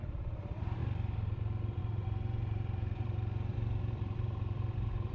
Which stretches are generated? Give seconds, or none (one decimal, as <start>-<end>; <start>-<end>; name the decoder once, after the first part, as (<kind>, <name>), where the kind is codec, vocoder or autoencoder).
0.0-0.8 (vocoder, BigVGAN v2); 1.8-5.1